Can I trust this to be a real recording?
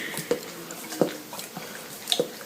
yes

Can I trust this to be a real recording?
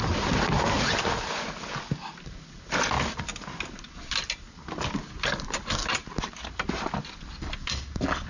yes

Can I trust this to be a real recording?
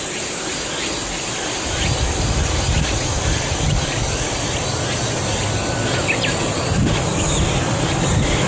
yes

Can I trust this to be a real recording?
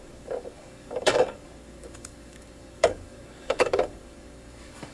no